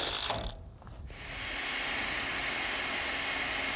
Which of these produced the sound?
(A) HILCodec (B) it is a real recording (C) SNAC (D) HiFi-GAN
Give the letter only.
B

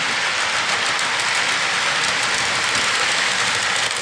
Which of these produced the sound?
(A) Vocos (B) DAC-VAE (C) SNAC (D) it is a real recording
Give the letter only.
D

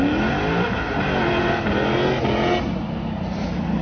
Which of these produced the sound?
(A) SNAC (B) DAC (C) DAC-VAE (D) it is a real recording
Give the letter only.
D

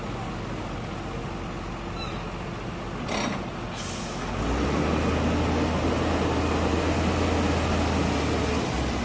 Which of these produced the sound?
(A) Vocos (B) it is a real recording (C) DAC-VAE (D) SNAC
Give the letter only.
B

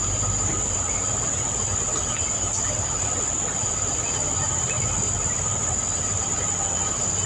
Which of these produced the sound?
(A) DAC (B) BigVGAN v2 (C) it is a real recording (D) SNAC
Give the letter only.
C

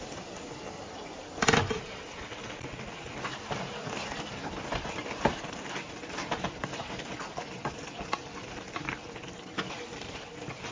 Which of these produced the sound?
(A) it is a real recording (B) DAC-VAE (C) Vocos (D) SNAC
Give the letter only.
A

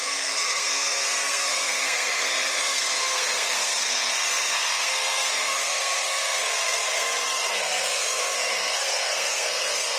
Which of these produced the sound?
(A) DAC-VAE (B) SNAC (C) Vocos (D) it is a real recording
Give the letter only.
B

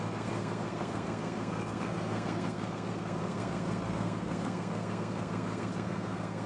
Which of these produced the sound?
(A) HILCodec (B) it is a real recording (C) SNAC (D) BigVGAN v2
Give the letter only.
C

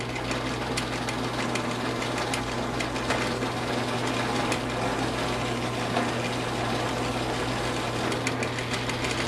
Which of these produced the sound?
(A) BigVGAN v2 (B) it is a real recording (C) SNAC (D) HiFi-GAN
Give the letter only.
B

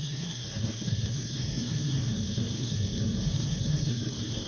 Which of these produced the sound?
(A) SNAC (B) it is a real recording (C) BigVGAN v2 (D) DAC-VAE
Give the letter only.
A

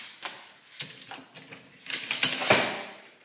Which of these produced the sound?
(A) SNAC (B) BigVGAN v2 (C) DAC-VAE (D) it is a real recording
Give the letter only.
D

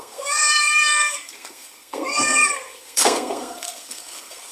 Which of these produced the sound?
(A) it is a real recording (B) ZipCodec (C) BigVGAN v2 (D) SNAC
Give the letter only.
D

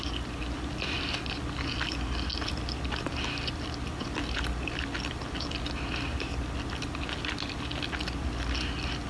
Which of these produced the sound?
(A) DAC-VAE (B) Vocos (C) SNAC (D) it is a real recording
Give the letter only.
D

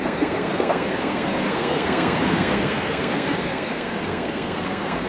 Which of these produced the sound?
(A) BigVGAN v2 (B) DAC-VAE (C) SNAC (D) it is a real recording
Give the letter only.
C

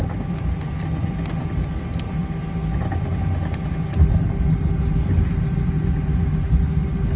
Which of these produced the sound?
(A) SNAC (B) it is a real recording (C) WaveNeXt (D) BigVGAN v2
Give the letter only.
B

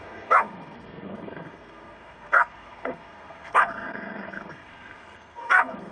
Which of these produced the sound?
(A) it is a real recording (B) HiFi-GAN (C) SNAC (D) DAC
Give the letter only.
C